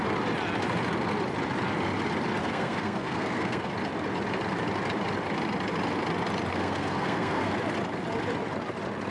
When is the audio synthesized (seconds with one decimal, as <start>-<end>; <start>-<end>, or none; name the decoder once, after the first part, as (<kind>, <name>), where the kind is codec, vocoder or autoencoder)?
2.4-3.7 (codec, SNAC); 6.5-7.5